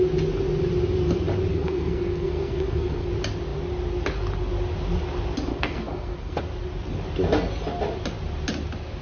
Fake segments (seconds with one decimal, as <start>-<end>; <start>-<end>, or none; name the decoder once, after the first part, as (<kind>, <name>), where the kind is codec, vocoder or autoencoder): 1.5-3.1 (codec, SNAC); 5.5-6.4